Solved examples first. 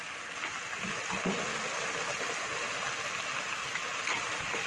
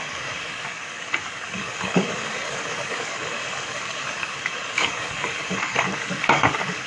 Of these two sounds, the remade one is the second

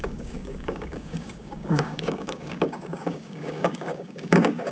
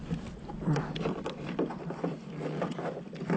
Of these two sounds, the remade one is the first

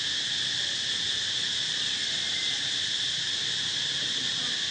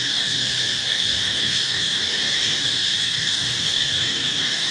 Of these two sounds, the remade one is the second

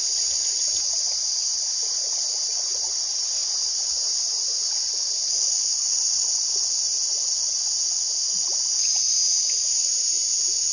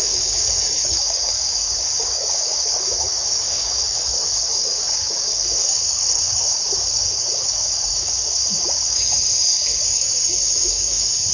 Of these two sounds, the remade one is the second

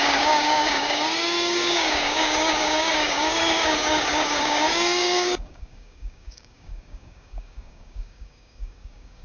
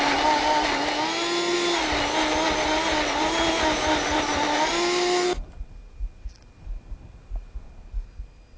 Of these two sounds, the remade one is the first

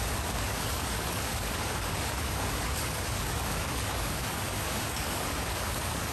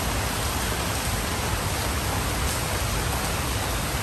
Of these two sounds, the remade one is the first